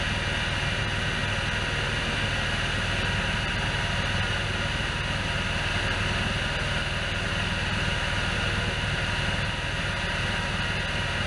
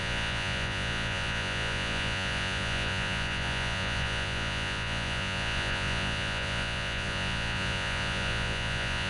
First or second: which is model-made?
second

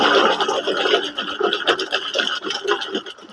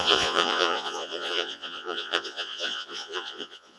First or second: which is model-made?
second